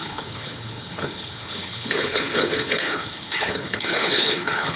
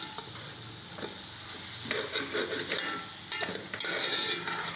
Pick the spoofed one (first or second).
first